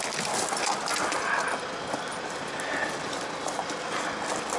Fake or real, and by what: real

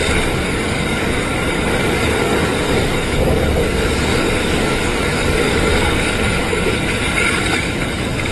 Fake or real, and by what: fake, codec, DAC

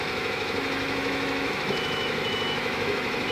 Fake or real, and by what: fake, autoencoder, DAC-VAE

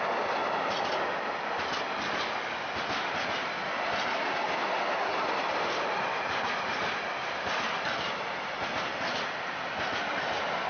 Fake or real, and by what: real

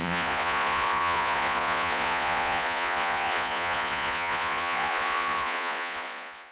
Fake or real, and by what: fake, vocoder, Vocos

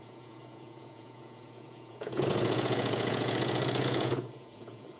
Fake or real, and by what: fake, vocoder, Vocos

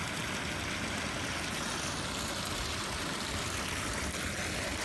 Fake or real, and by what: real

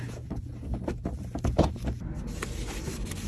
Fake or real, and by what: real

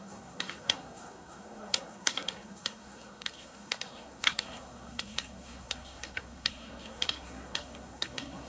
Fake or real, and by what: fake, codec, SNAC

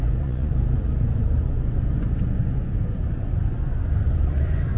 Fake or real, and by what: fake, vocoder, Vocos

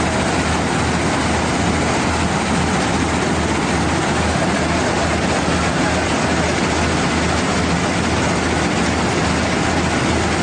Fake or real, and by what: real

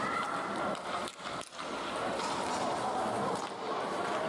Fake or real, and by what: real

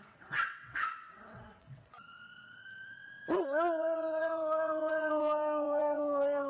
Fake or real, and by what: fake, vocoder, WaveNeXt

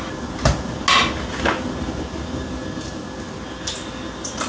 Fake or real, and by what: real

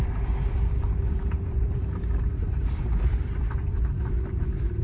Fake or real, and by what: fake, vocoder, BigVGAN v2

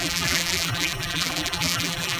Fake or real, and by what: fake, vocoder, BigVGAN v2